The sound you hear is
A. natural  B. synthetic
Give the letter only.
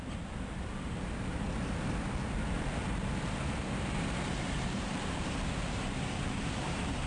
B